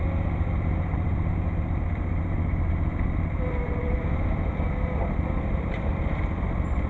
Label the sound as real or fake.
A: fake